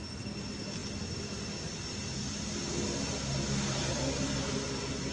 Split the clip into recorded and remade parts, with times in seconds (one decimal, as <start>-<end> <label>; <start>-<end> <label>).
0.0-5.1 recorded